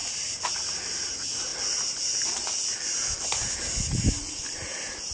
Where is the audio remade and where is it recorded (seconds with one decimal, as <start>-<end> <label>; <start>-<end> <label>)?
0.0-5.1 recorded